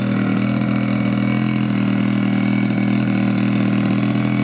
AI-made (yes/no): no